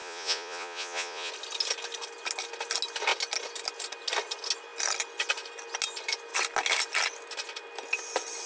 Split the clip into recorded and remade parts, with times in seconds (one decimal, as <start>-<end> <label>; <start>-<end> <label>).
0.0-1.3 remade; 1.3-8.5 recorded

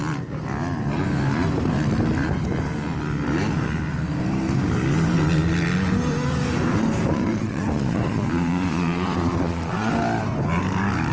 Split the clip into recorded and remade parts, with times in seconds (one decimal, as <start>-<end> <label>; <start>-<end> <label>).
0.0-7.1 recorded; 7.1-9.9 remade; 9.9-11.1 recorded

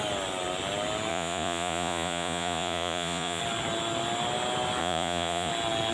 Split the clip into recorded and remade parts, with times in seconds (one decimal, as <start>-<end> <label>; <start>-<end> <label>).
0.0-1.1 recorded; 1.1-3.4 remade; 3.4-4.8 recorded; 4.8-5.5 remade; 5.5-5.9 recorded

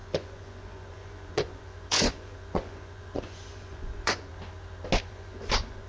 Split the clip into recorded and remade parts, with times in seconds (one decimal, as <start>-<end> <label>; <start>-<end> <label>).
0.0-4.3 remade; 4.3-5.1 recorded; 5.1-5.9 remade

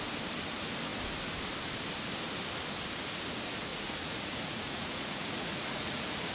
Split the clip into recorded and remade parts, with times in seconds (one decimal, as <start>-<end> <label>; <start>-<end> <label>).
0.0-3.7 recorded; 3.7-6.3 remade

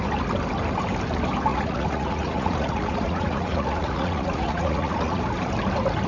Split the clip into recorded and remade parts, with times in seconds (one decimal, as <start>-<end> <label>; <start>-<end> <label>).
0.0-1.5 recorded; 1.5-5.2 remade; 5.2-6.1 recorded

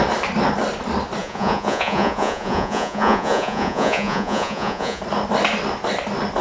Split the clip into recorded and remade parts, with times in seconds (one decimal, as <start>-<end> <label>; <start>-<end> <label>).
0.0-1.2 recorded; 1.2-5.0 remade; 5.0-6.4 recorded

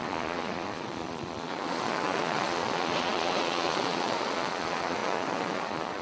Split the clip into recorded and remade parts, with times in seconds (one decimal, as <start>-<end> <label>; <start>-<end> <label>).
0.0-6.0 remade